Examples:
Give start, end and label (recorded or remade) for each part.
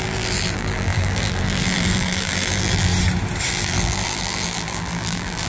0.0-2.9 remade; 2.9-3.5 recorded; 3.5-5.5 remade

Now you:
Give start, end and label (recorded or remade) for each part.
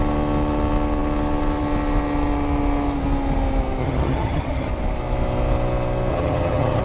0.0-3.8 recorded; 3.8-4.7 remade; 4.7-6.1 recorded; 6.1-6.8 remade